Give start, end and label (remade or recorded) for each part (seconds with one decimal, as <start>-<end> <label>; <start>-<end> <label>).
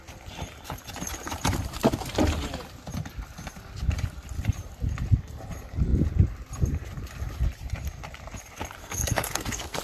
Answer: 0.0-8.8 recorded; 8.8-9.8 remade